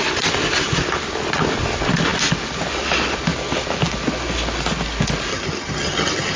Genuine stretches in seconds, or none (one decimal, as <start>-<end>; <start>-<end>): 0.0-5.3